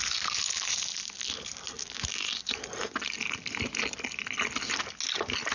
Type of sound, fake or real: real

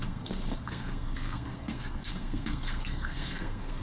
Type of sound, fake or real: fake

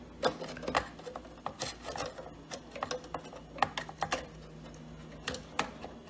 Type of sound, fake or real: real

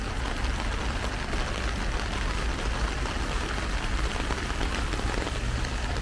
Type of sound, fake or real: real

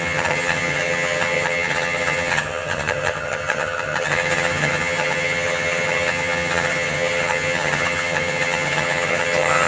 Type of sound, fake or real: fake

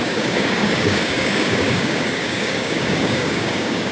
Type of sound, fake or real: fake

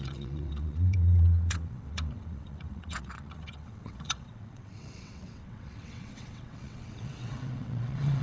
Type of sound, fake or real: fake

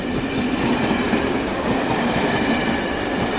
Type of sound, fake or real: real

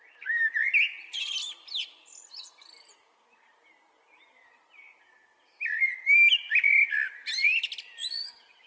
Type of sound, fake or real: real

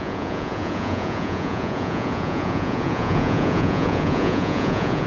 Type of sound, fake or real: fake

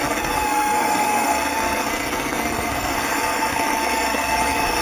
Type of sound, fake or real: fake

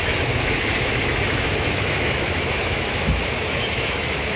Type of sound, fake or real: fake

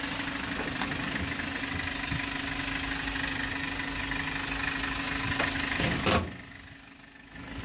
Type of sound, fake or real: real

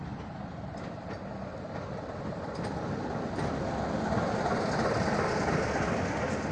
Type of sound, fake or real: real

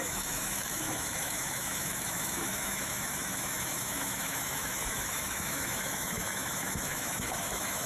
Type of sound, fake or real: fake